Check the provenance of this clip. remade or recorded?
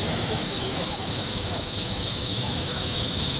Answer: remade